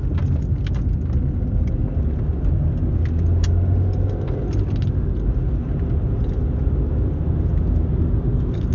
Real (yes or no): yes